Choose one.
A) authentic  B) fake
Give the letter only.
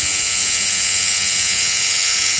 B